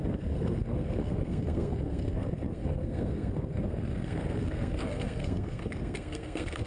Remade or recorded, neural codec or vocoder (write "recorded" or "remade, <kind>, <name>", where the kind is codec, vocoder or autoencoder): remade, codec, SNAC